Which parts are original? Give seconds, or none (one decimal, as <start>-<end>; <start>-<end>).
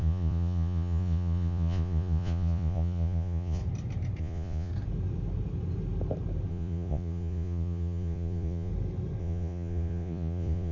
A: 3.6-4.2; 4.7-6.5; 8.7-9.2